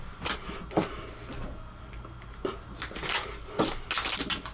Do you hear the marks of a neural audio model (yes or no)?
no